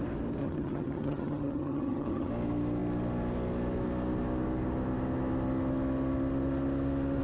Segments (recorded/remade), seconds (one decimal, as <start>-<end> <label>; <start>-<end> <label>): 0.0-0.4 recorded; 0.4-2.3 remade; 2.3-7.2 recorded